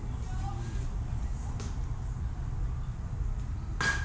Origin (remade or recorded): recorded